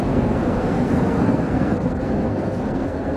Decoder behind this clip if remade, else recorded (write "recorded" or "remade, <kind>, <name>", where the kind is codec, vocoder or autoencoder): remade, codec, SNAC